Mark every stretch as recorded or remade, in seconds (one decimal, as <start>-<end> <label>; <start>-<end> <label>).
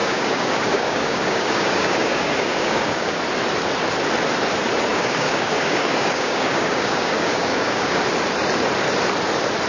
0.0-3.2 remade; 3.2-4.9 recorded; 4.9-8.0 remade; 8.0-9.7 recorded